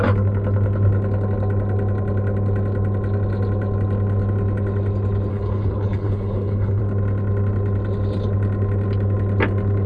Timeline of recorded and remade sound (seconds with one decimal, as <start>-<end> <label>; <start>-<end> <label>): 0.0-5.3 recorded; 5.3-6.8 remade; 6.8-9.9 recorded